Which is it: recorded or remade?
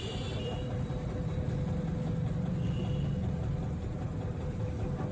recorded